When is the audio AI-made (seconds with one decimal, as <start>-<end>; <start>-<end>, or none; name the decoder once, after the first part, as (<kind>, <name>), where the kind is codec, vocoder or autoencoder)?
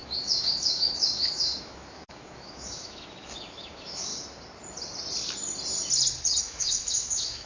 0.0-4.1 (autoencoder, DAC-VAE); 6.4-7.5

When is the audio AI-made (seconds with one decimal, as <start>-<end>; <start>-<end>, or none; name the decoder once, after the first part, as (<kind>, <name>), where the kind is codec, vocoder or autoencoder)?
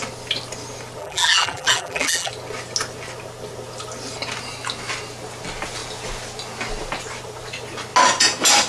1.0-2.3 (vocoder, BigVGAN v2)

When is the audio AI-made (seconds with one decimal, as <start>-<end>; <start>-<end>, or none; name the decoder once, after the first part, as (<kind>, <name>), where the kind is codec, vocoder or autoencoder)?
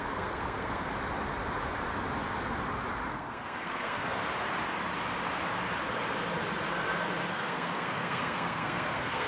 0.0-0.9 (codec, SNAC); 3.1-4.2; 7.3-9.3